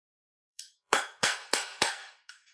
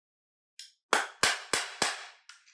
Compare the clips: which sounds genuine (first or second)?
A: second